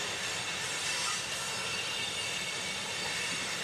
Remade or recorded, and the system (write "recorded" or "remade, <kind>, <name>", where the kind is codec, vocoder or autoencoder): remade, vocoder, BigVGAN v2